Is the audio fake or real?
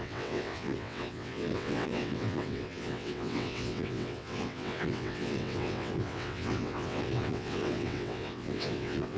fake